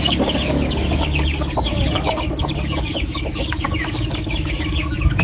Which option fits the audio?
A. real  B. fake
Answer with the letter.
B